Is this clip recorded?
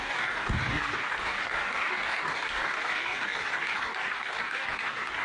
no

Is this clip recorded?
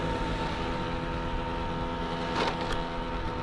yes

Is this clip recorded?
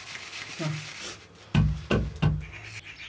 yes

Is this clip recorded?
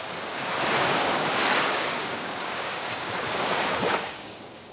no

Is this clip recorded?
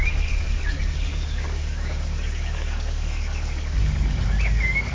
no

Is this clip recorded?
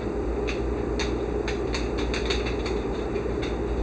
yes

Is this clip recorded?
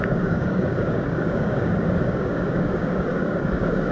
no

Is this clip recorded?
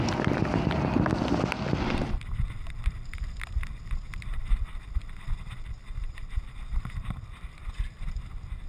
yes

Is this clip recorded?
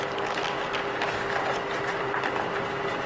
yes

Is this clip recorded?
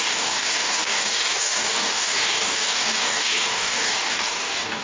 no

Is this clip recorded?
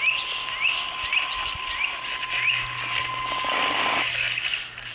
yes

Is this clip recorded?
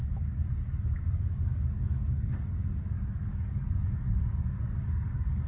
no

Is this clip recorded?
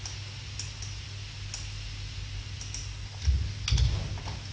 yes